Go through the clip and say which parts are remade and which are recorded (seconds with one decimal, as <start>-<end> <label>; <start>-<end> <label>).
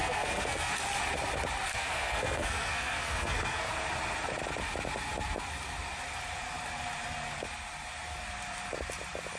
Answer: 0.0-0.7 remade; 0.7-1.7 recorded; 1.7-3.7 remade; 3.7-9.4 recorded